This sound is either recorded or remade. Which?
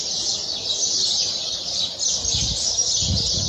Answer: recorded